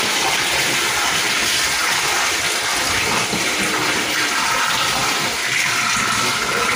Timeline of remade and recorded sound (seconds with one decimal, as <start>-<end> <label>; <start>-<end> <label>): 0.0-6.8 recorded